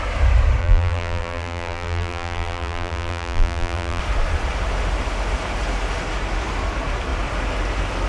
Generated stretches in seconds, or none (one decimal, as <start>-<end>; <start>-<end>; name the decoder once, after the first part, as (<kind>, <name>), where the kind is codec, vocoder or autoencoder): 0.6-4.0 (vocoder, BigVGAN v2)